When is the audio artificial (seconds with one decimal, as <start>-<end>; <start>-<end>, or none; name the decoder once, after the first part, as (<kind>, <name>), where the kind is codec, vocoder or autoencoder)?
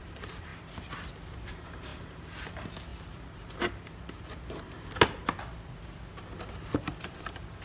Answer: 0.0-0.5 (vocoder, BigVGAN v2); 1.5-2.9; 7.0-7.6